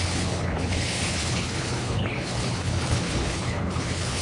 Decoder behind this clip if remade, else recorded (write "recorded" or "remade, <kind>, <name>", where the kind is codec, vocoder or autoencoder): remade, codec, HILCodec